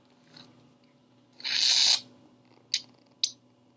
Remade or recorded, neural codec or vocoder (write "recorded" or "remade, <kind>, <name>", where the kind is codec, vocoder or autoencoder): recorded